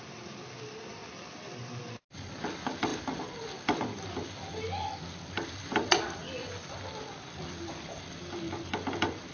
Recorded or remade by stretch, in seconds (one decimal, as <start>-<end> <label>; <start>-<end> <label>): 0.0-9.3 recorded